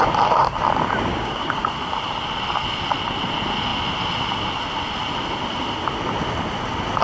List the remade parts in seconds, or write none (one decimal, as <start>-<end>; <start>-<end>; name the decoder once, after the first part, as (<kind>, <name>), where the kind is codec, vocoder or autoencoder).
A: 1.1-1.7 (codec, DAC)